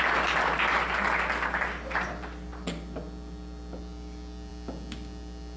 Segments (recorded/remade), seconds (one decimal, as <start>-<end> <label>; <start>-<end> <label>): 0.0-5.6 recorded